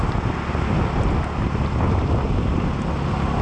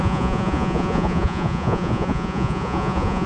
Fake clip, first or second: second